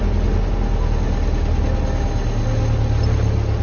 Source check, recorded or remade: recorded